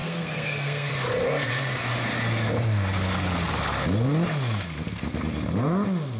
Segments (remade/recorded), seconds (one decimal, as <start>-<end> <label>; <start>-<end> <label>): 0.0-0.9 remade; 0.9-6.2 recorded